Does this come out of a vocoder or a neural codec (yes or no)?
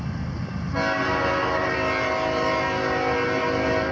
no